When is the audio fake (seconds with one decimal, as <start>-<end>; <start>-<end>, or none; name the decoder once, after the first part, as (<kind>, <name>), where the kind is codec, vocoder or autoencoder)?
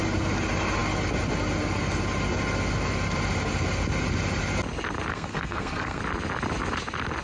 5.1-6.0 (codec, SNAC)